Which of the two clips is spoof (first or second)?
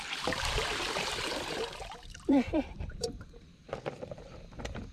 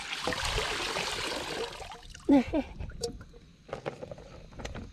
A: first